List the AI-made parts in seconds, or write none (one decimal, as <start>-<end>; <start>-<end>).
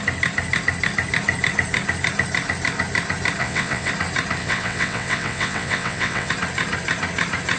3.4-3.9; 4.4-6.3